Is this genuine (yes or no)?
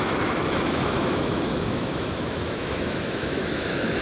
no